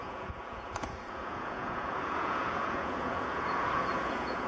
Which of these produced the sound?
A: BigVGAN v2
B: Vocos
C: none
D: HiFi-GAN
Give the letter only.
B